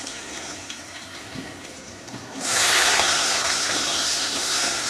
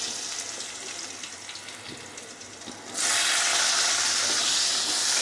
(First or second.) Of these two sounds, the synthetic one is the first